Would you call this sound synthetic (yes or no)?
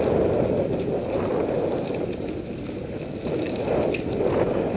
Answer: no